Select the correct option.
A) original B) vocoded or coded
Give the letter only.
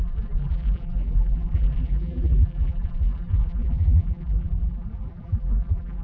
B